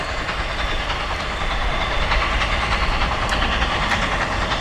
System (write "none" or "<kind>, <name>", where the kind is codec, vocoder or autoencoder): none